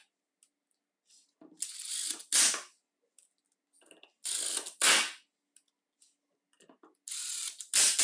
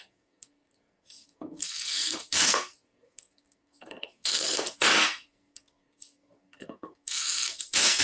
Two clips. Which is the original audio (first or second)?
first